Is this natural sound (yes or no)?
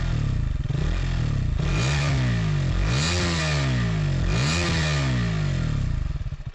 yes